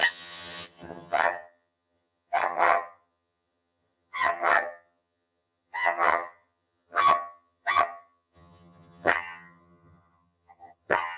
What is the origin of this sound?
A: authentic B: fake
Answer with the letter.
B